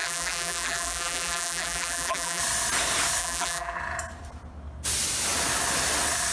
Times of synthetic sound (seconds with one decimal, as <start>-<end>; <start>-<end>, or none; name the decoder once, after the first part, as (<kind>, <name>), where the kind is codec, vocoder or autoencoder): 0.0-2.4 (vocoder, BigVGAN v2); 3.2-3.8